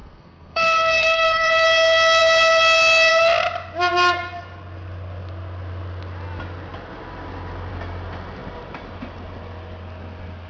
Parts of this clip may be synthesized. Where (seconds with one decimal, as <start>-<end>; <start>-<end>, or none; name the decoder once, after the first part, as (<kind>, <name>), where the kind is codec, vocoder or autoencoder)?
0.0-1.5 (codec, SNAC)